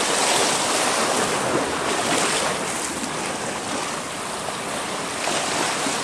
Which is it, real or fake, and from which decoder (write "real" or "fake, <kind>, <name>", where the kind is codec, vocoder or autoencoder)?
real